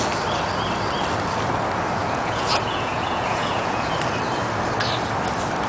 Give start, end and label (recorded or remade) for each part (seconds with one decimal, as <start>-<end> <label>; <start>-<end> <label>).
0.0-2.0 recorded; 2.0-3.9 remade; 3.9-5.7 recorded